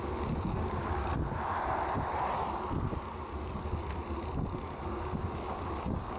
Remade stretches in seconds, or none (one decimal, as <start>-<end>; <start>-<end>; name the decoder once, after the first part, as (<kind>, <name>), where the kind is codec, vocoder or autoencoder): 0.0-1.1 (codec, DAC); 4.8-6.2